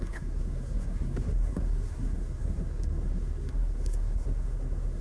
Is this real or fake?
fake